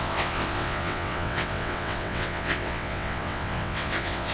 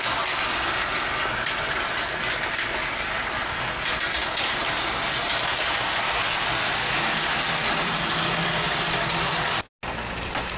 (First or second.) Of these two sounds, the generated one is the first